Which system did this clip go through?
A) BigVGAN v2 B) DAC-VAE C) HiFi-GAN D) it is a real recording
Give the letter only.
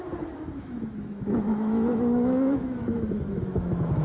B